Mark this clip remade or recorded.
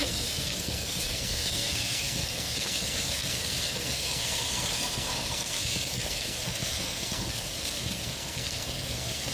remade